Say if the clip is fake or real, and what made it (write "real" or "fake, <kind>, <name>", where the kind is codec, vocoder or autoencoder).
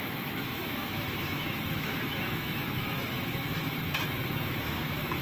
fake, autoencoder, DAC-VAE